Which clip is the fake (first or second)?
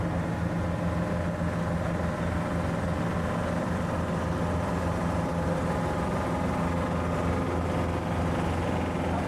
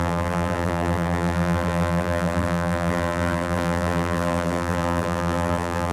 second